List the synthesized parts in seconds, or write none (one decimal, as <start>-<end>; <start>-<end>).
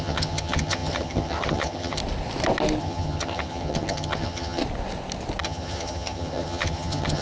0.0-2.0; 2.8-4.6; 5.4-7.2